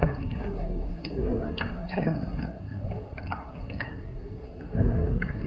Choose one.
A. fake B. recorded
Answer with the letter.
A